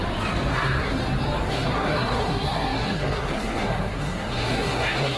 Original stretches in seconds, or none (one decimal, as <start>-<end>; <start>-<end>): 0.0-0.5; 1.0-1.5